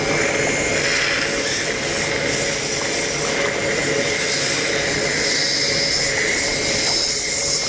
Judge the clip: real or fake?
real